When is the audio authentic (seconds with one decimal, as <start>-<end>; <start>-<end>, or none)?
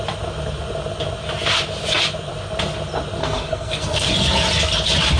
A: 0.0-3.2; 4.1-5.2